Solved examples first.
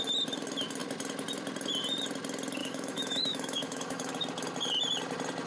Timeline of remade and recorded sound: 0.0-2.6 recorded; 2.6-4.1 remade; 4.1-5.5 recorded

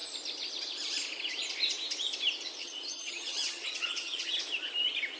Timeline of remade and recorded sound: 0.0-2.6 recorded; 2.6-4.4 remade; 4.4-5.2 recorded